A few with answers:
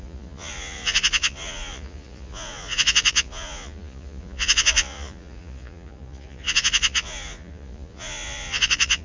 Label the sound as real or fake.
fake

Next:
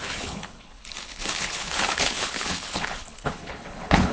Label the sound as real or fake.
fake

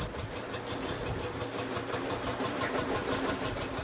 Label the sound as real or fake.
real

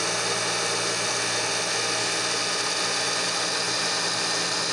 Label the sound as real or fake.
real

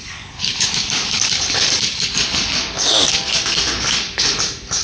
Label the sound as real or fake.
fake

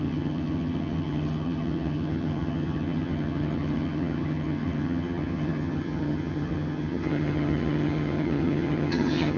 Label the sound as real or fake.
fake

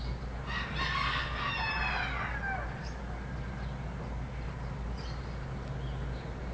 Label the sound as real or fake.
real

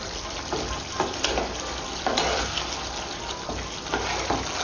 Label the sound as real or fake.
real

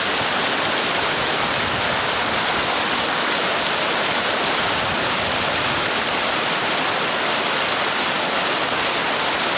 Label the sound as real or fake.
real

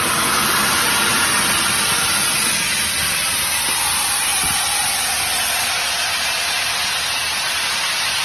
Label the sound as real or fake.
real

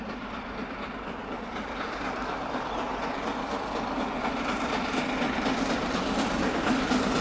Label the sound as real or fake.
fake